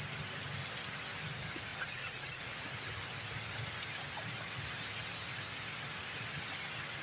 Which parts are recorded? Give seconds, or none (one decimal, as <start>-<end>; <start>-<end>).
0.0-1.7; 2.6-7.0